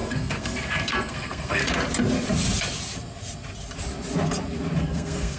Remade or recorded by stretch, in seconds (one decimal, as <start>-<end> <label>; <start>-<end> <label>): 0.0-1.6 remade; 1.6-4.8 recorded; 4.8-5.4 remade